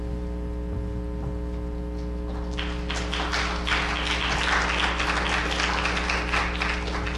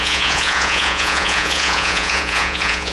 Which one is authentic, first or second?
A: first